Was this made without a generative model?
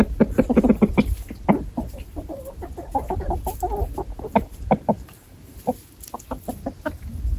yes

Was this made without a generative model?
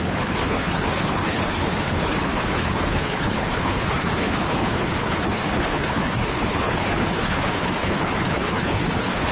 no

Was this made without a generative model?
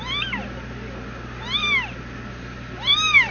yes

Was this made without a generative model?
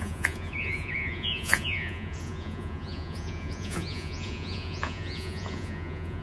no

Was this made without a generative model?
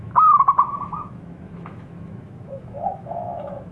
no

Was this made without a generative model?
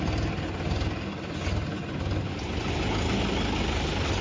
yes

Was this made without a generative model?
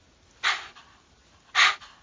yes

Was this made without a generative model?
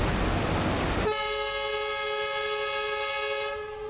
yes